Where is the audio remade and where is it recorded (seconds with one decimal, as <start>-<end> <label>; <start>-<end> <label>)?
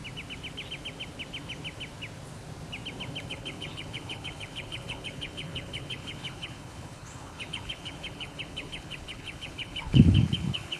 0.0-3.3 recorded; 3.3-10.8 remade